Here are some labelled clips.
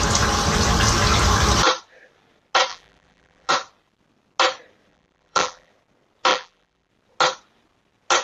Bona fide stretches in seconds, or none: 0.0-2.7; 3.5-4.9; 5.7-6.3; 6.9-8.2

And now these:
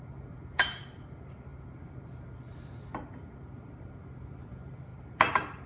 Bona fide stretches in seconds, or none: none

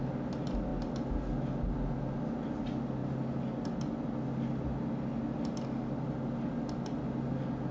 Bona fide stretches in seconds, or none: 0.0-7.7